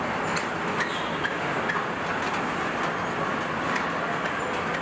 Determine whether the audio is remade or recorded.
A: recorded